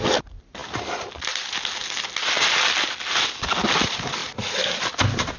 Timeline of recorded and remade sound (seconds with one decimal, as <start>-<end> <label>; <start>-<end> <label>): 0.0-4.2 recorded; 4.2-4.8 remade; 4.8-5.4 recorded